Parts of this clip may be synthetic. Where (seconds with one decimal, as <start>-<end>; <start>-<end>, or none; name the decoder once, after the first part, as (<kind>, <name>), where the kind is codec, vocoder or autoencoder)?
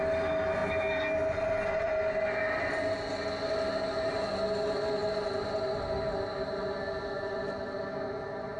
none